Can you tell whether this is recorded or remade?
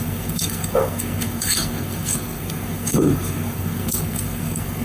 remade